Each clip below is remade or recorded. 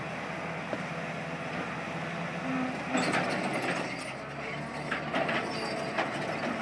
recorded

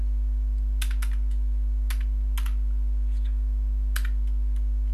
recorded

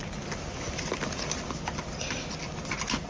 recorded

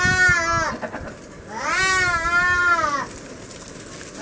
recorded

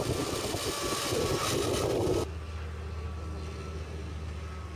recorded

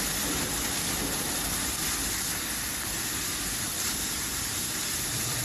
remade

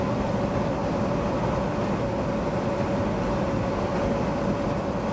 recorded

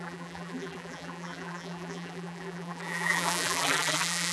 remade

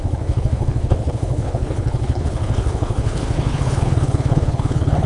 remade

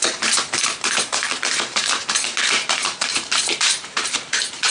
remade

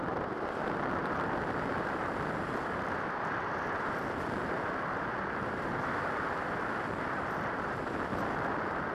remade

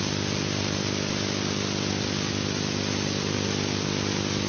recorded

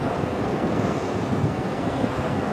remade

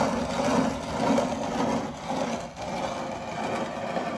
recorded